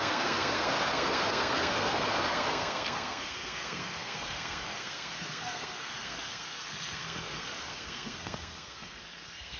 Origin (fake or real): fake